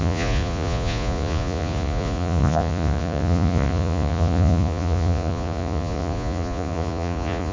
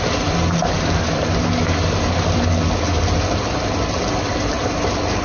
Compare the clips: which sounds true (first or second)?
second